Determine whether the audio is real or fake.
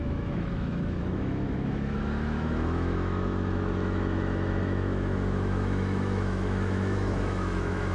fake